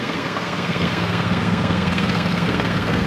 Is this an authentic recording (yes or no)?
no